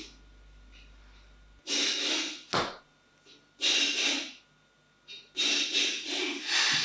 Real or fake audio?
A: real